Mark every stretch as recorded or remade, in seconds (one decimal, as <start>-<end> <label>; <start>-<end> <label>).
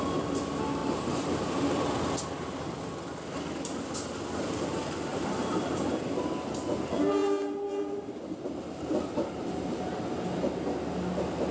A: 0.0-0.8 recorded; 0.8-1.8 remade; 1.8-5.1 recorded; 5.1-5.8 remade; 5.8-11.5 recorded